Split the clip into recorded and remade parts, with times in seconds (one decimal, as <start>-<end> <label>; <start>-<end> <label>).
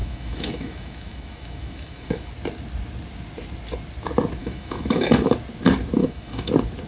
0.0-2.3 remade; 2.3-4.4 recorded; 4.4-5.3 remade; 5.3-6.0 recorded; 6.0-6.5 remade; 6.5-6.9 recorded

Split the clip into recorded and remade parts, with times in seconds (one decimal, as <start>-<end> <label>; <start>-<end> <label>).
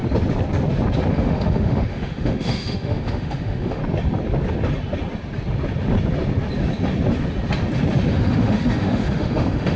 0.0-1.1 recorded; 1.1-3.8 remade; 3.8-8.1 recorded; 8.1-9.8 remade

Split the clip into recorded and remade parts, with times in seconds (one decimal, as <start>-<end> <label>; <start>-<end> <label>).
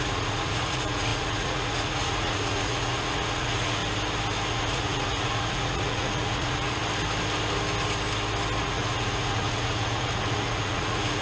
0.0-3.8 remade; 3.8-4.5 recorded; 4.5-6.8 remade; 6.8-8.6 recorded; 8.6-11.2 remade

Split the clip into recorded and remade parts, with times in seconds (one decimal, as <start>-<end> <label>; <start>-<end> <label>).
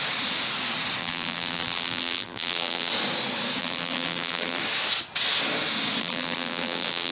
0.0-1.0 recorded; 1.0-2.9 remade; 2.9-3.6 recorded; 3.6-4.6 remade; 4.6-6.0 recorded; 6.0-7.1 remade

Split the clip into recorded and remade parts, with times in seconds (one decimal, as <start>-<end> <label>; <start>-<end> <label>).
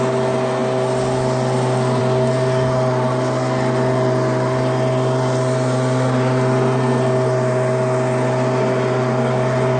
0.0-9.8 recorded